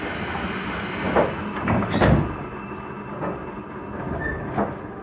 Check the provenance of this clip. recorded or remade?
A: recorded